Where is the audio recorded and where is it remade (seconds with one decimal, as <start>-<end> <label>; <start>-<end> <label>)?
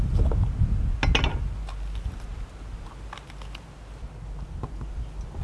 0.0-5.4 recorded